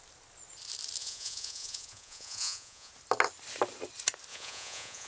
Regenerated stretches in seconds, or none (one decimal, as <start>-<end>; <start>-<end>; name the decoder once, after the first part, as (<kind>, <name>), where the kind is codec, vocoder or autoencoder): 1.0-2.9 (vocoder, Vocos); 4.3-5.1